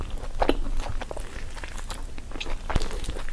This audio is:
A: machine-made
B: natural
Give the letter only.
B